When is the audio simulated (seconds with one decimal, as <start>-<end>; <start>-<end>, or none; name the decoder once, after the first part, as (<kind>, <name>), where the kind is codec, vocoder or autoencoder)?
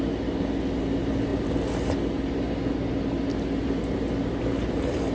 none